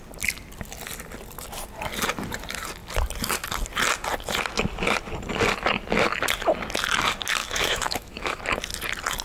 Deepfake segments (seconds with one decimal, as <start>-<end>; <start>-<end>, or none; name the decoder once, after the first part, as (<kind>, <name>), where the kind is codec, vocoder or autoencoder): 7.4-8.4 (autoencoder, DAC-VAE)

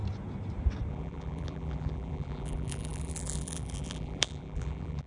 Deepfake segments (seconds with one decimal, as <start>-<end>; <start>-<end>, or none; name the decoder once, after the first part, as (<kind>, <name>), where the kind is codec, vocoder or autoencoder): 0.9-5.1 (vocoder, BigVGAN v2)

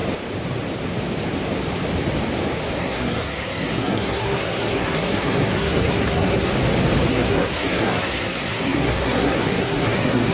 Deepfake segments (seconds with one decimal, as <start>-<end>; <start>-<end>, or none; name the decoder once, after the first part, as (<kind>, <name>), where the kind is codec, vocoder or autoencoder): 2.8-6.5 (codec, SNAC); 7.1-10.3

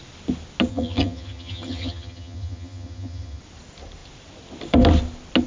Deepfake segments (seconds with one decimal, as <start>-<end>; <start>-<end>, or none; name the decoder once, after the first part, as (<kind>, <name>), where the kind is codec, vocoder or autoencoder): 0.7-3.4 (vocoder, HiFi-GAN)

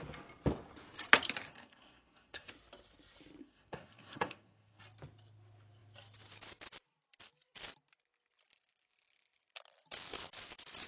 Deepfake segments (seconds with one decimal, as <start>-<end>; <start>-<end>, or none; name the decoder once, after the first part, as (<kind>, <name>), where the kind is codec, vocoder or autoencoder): 1.5-2.5 (codec, SNAC); 3.4-4.8

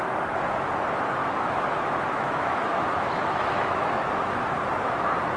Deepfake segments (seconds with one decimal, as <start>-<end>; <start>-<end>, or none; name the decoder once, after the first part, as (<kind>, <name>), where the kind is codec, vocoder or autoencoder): 1.2-4.4 (autoencoder, DAC-VAE)

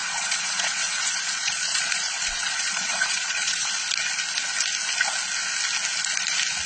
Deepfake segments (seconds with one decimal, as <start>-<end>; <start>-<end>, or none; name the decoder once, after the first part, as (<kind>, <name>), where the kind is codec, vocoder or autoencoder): 0.0-3.7 (vocoder, Vocos)